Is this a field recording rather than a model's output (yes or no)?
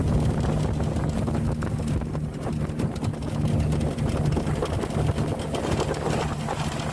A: yes